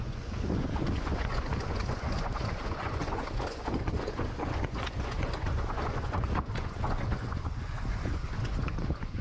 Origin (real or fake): fake